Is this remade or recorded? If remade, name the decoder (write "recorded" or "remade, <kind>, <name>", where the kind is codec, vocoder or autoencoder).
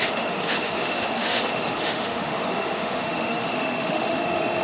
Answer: remade, autoencoder, DAC-VAE